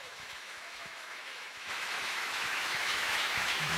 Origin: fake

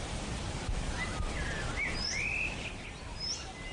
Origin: real